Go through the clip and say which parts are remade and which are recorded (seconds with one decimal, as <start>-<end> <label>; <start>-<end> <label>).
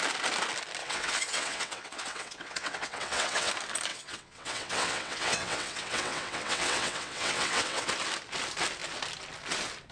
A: 0.0-0.8 recorded; 0.8-3.5 remade; 3.5-3.9 recorded; 3.9-7.9 remade; 7.9-9.9 recorded